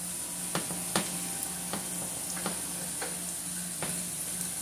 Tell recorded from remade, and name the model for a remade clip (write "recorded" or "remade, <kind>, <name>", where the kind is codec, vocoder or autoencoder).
recorded